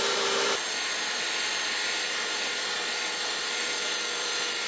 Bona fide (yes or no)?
no